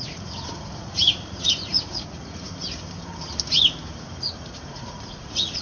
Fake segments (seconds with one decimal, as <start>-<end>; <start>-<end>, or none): 0.0-2.5; 4.2-5.6